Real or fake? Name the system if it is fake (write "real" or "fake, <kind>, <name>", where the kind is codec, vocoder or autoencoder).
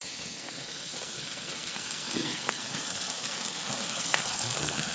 fake, codec, SNAC